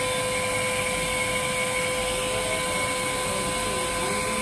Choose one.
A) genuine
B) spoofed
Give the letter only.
A